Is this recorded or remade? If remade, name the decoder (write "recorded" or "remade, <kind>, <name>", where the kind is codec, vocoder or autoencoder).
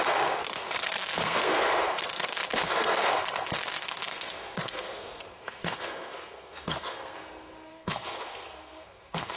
remade, codec, SNAC